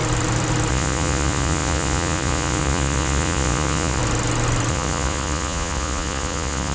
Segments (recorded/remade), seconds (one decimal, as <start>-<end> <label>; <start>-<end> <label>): 0.0-0.7 recorded; 0.7-4.0 remade; 4.0-4.7 recorded; 4.7-6.7 remade